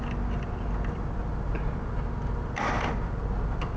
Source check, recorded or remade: recorded